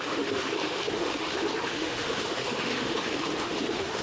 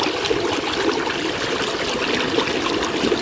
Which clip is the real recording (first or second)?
second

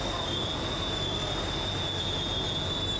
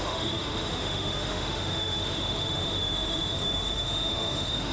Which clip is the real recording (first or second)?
first